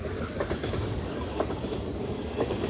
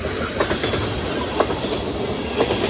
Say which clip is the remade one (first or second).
first